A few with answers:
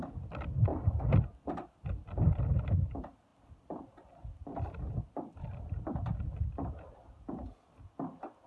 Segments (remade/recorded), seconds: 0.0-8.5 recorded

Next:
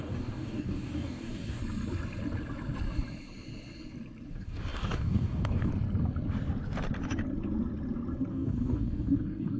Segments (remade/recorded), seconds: 0.0-1.6 remade; 1.6-4.3 recorded; 4.3-5.7 remade; 5.7-8.3 recorded; 8.3-9.6 remade

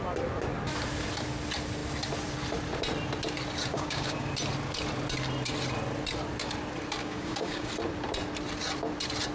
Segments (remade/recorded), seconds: 0.0-3.7 recorded; 3.7-4.3 remade; 4.3-7.0 recorded; 7.0-7.7 remade; 7.7-9.3 recorded

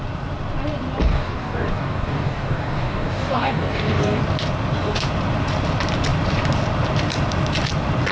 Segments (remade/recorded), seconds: 0.0-1.0 recorded; 1.0-4.2 remade; 4.2-8.1 recorded

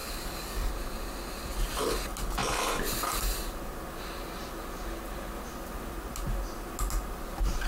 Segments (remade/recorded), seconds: 0.0-0.7 remade; 0.7-7.7 recorded

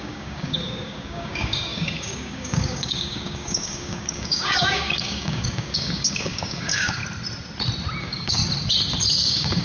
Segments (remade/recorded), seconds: 0.0-7.0 remade; 7.0-8.0 recorded; 8.0-8.4 remade; 8.4-9.1 recorded; 9.1-9.6 remade